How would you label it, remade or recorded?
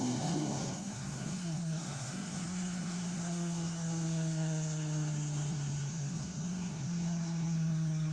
remade